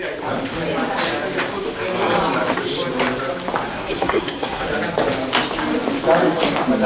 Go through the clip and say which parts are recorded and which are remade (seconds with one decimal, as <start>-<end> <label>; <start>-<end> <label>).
0.0-3.7 recorded; 3.7-4.7 remade; 4.7-6.9 recorded